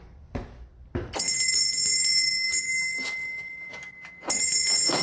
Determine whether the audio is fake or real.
real